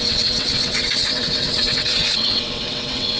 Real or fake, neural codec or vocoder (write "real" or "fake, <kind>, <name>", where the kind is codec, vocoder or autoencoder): fake, vocoder, WaveNeXt